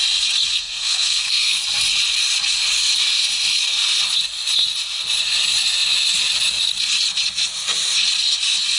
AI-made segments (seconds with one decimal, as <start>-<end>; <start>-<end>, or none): 0.5-1.6